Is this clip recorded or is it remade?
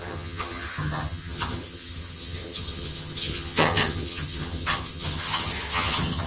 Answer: remade